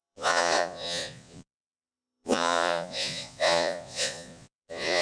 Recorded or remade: remade